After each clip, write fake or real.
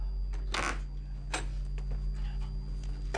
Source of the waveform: real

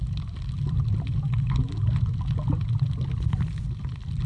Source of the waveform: real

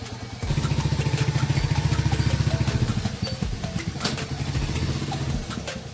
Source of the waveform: real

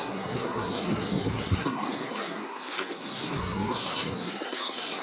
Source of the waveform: fake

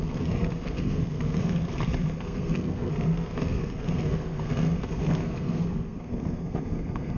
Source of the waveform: fake